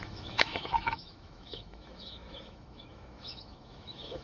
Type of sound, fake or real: fake